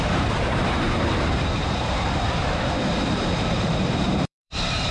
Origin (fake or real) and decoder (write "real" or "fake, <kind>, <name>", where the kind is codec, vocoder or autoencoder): fake, vocoder, BigVGAN v2